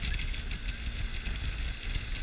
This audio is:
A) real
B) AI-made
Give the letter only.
A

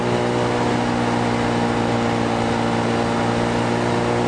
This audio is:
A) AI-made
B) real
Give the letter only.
B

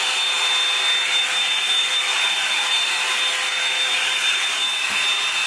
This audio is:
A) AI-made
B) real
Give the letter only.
B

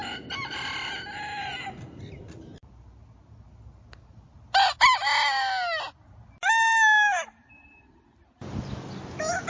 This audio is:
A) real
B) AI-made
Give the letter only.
A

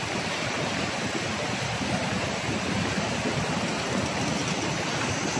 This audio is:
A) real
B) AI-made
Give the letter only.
A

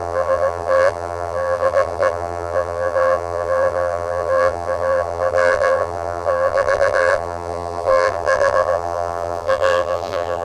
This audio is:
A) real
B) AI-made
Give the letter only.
B